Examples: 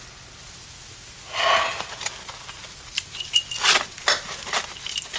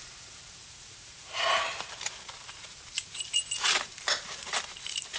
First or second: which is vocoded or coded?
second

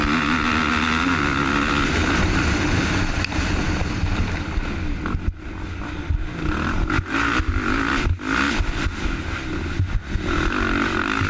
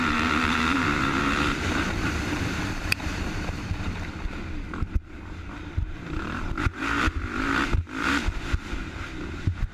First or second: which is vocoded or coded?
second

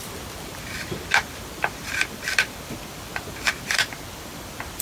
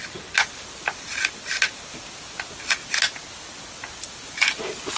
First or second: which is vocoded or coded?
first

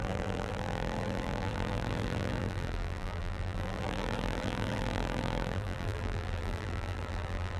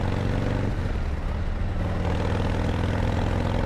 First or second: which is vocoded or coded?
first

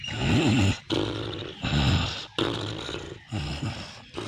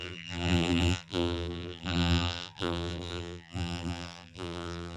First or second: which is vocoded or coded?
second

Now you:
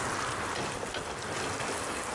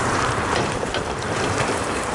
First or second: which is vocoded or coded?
second